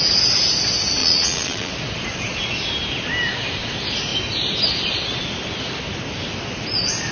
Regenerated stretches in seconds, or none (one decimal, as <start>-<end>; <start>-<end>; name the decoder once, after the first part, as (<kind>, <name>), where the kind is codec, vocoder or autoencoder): 1.0-1.7 (vocoder, Vocos)